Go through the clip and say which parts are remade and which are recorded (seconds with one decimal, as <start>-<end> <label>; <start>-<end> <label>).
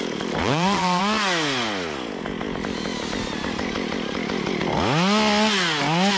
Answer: 0.0-0.4 recorded; 0.4-1.0 remade; 1.0-6.2 recorded